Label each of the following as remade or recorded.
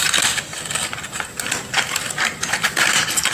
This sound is recorded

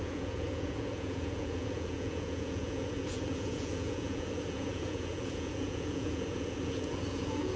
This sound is remade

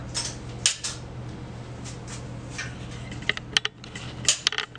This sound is recorded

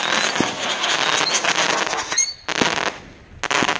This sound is recorded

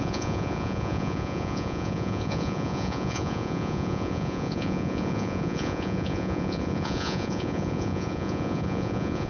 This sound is remade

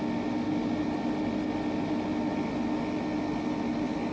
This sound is recorded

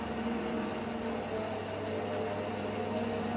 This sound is recorded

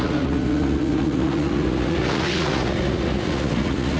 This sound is remade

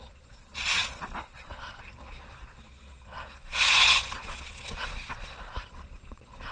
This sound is remade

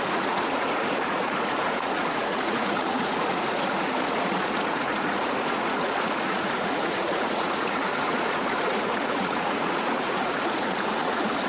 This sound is remade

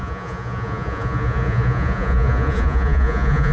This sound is remade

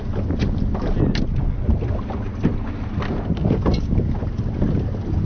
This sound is recorded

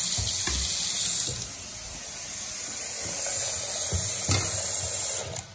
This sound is recorded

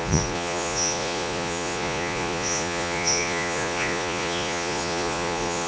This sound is remade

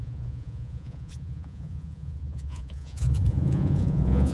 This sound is remade